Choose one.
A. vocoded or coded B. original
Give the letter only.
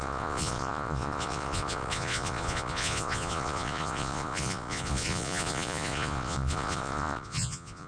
A